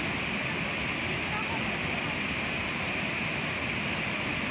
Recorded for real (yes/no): yes